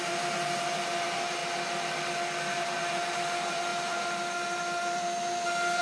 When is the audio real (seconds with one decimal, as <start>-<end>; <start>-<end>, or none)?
1.4-2.5